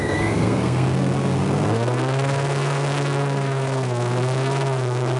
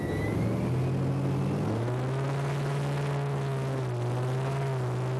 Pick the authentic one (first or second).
second